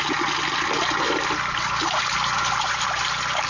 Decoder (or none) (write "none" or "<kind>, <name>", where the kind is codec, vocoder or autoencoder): none